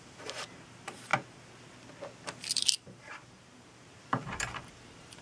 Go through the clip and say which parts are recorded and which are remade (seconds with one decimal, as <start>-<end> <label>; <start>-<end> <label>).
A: 0.0-1.1 remade; 1.1-2.5 recorded; 2.5-5.2 remade